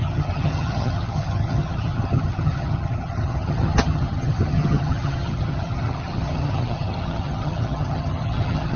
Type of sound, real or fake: fake